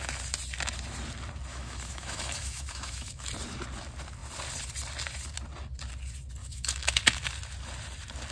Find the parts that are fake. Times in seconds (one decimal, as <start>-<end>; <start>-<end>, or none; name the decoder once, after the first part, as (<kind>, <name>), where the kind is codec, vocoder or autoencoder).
1.5-3.3 (autoencoder, DAC-VAE); 6.4-7.0